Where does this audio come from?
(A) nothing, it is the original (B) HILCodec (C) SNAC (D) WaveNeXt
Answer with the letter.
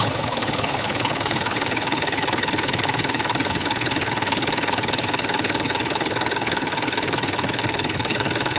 B